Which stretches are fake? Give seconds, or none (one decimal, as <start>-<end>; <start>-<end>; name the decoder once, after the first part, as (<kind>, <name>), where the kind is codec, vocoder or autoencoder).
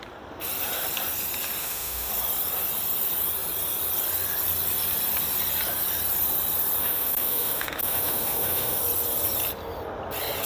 1.6-2.1 (autoencoder, DAC-VAE); 6.8-8.8